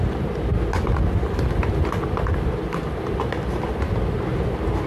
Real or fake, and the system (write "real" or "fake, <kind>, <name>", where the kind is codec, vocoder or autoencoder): real